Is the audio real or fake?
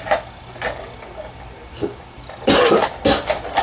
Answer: real